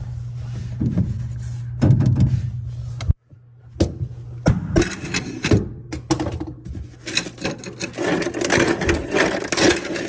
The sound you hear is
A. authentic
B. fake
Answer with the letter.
A